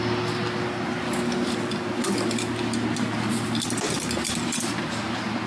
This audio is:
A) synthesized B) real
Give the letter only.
B